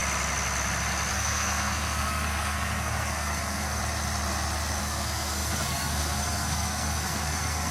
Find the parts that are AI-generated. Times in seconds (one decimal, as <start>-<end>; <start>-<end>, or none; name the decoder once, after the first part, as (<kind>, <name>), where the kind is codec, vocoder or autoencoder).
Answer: 1.1-3.8 (codec, SNAC); 4.8-7.7